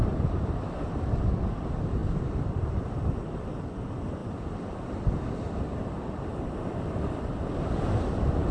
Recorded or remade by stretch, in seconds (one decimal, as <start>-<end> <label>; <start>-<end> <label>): 0.0-8.5 recorded